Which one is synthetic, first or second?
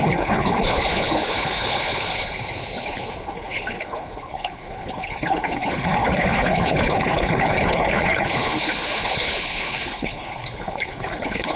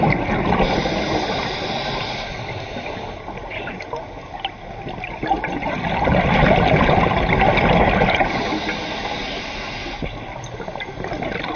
first